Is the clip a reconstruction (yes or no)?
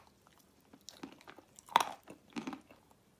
no